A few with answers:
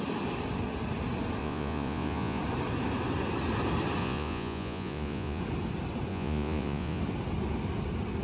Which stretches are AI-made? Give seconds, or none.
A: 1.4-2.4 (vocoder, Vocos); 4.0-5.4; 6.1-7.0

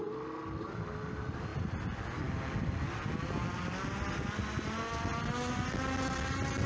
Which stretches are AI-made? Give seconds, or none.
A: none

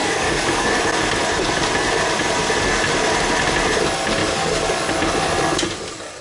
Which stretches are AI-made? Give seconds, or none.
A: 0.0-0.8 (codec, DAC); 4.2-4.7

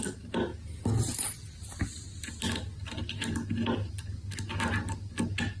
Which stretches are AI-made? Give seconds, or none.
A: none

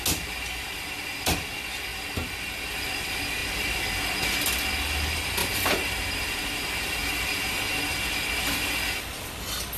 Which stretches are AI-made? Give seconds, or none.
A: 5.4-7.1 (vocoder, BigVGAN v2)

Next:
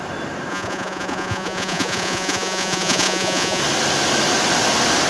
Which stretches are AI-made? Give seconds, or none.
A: 0.5-3.6 (vocoder, Vocos)